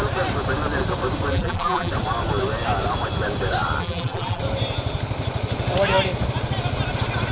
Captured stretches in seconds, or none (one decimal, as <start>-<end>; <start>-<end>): 0.0-1.3; 1.9-3.8; 4.4-7.3

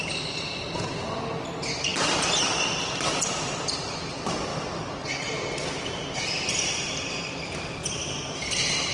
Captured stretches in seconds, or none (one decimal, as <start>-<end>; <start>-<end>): 0.0-8.9

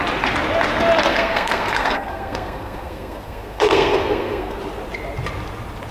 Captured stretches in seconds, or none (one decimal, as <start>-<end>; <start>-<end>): 0.0-1.1; 4.6-5.9

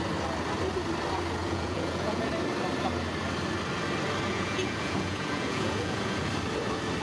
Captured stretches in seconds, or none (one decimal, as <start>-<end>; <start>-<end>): 0.0-1.4; 2.3-4.3; 6.3-7.0

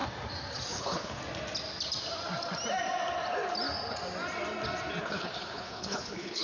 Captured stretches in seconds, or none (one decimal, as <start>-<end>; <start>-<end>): 0.0-0.7; 1.2-5.0